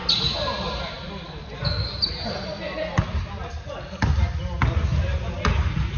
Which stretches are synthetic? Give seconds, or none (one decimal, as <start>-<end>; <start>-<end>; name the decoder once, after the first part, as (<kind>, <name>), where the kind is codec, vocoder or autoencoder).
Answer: none